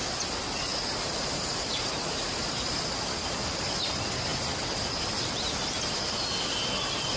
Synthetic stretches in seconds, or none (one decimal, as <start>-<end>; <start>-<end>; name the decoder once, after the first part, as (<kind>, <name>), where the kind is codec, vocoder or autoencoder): none